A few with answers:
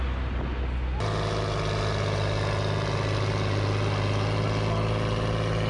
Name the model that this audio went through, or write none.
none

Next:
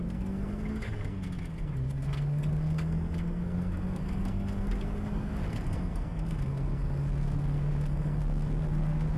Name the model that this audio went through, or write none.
codec, SNAC